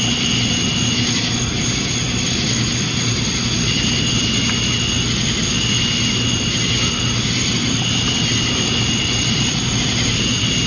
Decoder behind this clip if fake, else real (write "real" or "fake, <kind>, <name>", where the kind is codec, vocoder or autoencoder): real